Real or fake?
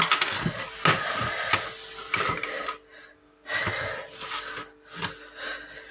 real